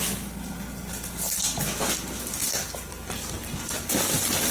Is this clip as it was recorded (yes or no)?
yes